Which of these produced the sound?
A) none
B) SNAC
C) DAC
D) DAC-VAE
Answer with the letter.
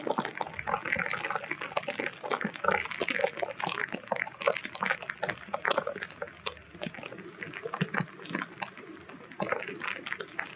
A